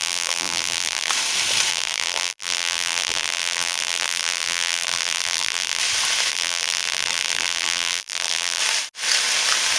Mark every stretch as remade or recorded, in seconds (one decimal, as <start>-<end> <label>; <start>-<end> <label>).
0.0-1.1 remade; 1.1-1.7 recorded; 1.7-5.8 remade; 5.8-6.3 recorded; 6.3-8.6 remade; 8.6-9.8 recorded